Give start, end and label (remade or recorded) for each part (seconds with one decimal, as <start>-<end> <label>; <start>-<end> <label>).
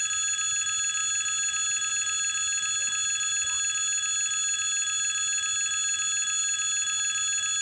0.0-7.6 recorded